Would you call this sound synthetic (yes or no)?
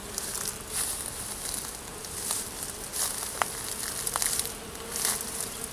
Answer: no